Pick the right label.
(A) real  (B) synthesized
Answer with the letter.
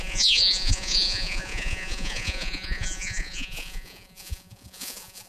B